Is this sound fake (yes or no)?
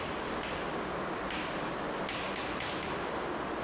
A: no